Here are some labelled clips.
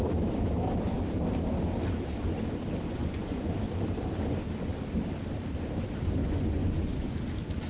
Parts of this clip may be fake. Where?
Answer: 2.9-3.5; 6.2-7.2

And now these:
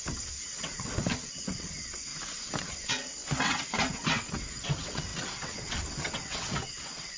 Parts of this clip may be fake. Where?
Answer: 0.0-2.1; 2.6-7.2

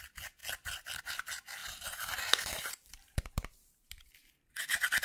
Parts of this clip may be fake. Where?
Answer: 1.6-4.6